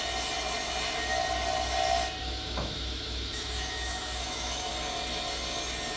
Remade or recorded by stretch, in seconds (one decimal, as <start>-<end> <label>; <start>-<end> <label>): 0.0-2.2 recorded; 2.2-4.7 remade; 4.7-6.0 recorded